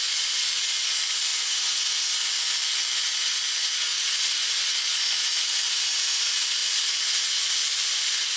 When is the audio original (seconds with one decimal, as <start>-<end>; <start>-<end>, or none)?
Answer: 0.0-1.3; 1.9-8.4